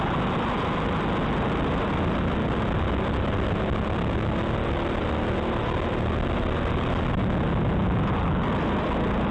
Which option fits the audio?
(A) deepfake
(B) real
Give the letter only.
B